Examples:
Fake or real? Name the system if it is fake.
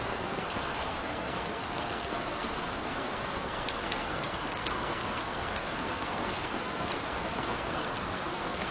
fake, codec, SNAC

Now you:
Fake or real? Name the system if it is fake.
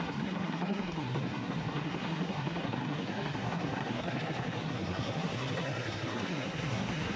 fake, codec, SNAC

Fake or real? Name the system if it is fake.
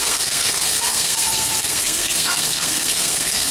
fake, codec, SNAC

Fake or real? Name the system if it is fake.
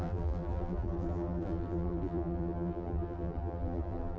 fake, vocoder, BigVGAN v2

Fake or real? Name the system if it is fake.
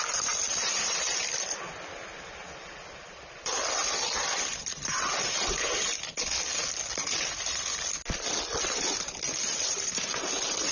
real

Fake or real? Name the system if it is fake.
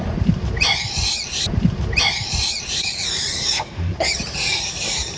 fake, vocoder, BigVGAN v2